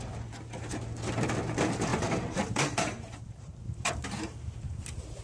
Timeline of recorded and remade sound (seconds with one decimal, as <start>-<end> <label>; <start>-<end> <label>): 0.0-1.9 recorded; 1.9-5.2 remade